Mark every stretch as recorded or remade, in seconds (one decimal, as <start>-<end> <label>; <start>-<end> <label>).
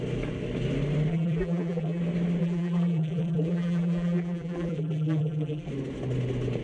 0.0-1.1 recorded; 1.1-2.0 remade; 2.0-2.4 recorded; 2.4-5.7 remade; 5.7-6.6 recorded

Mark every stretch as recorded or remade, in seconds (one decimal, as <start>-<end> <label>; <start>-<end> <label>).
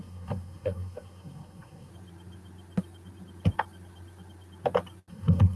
0.0-1.9 remade; 1.9-5.1 recorded; 5.1-5.6 remade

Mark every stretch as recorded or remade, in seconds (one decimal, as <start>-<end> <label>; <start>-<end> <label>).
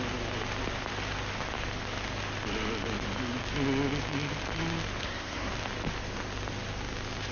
0.0-5.0 recorded; 5.0-5.5 remade; 5.5-7.3 recorded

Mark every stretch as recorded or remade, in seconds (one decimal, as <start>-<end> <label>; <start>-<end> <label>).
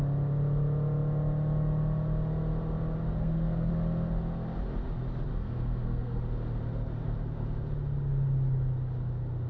0.0-3.1 recorded; 3.1-3.7 remade; 3.7-5.3 recorded; 5.3-6.2 remade; 6.2-9.5 recorded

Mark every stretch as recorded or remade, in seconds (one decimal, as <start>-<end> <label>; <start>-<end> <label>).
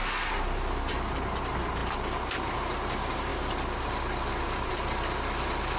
0.0-5.8 recorded